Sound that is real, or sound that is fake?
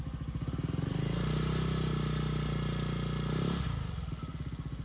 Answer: real